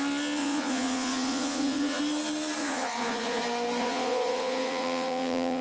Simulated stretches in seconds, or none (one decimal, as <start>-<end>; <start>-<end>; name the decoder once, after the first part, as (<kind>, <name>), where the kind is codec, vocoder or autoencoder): 0.4-2.0 (vocoder, Vocos); 2.6-3.4; 3.8-5.6